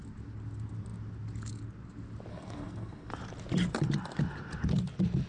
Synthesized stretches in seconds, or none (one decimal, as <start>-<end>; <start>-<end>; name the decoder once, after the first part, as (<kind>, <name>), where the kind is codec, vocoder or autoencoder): 2.3-3.1 (codec, SNAC)